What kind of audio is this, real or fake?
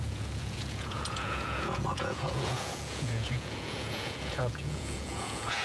fake